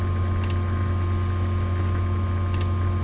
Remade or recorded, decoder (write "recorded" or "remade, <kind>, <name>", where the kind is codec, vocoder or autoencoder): recorded